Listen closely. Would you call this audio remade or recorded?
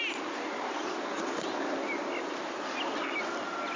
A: recorded